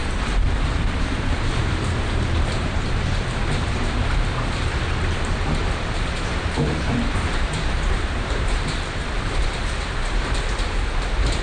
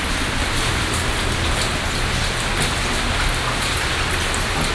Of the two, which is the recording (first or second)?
second